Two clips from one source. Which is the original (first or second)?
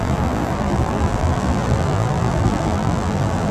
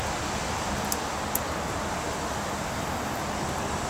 second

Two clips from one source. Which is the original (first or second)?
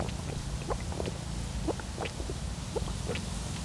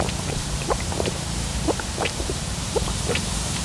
first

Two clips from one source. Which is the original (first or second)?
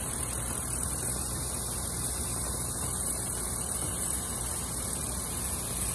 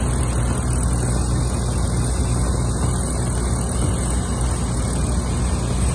second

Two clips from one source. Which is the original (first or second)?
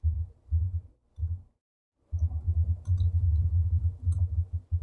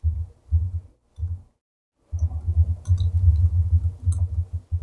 second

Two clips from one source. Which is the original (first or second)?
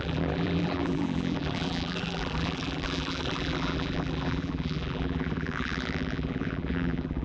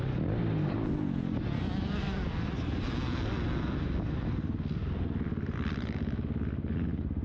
second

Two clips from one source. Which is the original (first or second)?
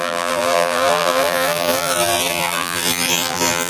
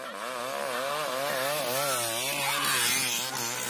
second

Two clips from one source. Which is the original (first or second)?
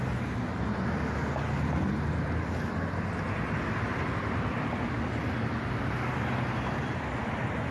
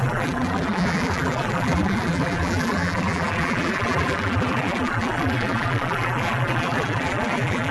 first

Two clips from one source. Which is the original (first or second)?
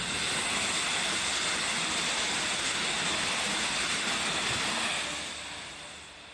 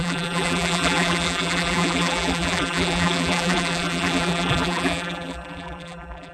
first